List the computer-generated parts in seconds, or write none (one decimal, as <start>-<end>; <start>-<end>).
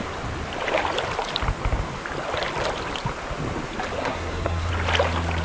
4.0-4.7